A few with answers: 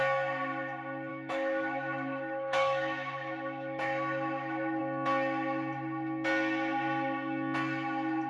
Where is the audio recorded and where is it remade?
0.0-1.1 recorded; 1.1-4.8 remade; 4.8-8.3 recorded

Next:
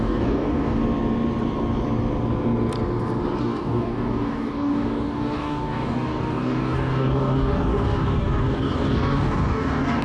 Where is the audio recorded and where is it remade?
0.0-0.8 remade; 0.8-3.4 recorded; 3.4-10.0 remade

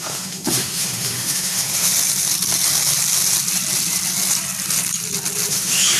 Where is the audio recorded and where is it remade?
0.0-1.9 remade; 1.9-5.5 recorded; 5.5-6.0 remade

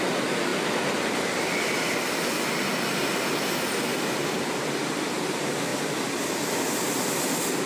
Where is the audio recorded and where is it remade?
0.0-0.5 remade; 0.5-4.0 recorded; 4.0-5.7 remade; 5.7-7.7 recorded

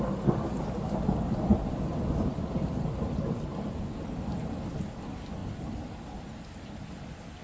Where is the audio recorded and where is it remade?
0.0-1.5 recorded; 1.5-2.9 remade; 2.9-5.4 recorded; 5.4-6.8 remade; 6.8-7.4 recorded

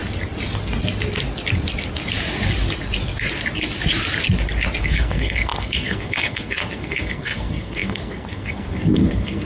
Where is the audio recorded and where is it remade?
0.0-4.8 recorded; 4.8-9.5 remade

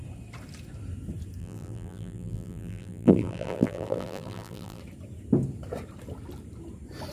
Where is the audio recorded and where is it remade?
0.0-1.4 recorded; 1.4-4.8 remade; 4.8-7.1 recorded

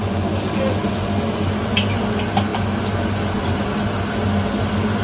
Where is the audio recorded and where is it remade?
0.0-2.5 recorded; 2.5-3.6 remade; 3.6-5.0 recorded